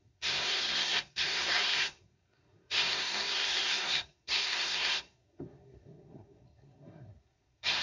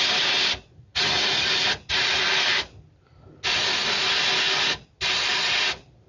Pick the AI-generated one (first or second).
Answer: first